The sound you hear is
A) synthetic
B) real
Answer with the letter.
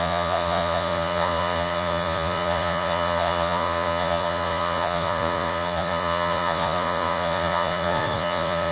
A